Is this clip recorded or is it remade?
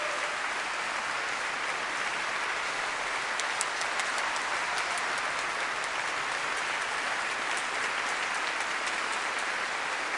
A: recorded